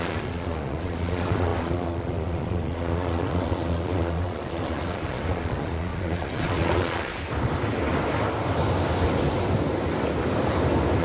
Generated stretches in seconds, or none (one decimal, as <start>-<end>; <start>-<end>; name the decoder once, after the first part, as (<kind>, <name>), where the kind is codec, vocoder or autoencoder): 0.0-7.1 (vocoder, Vocos)